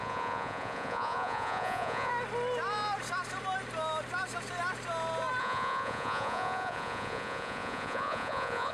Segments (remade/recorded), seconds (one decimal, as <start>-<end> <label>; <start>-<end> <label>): 0.0-2.1 remade; 2.1-5.4 recorded; 5.4-8.7 remade